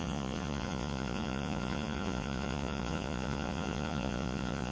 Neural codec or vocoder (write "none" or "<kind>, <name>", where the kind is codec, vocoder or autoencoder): vocoder, Vocos